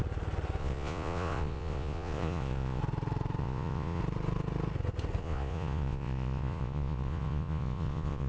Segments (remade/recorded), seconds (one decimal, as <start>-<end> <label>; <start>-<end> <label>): 0.0-0.6 recorded; 0.6-2.8 remade; 2.8-3.4 recorded; 3.4-4.0 remade; 4.0-5.2 recorded; 5.2-8.3 remade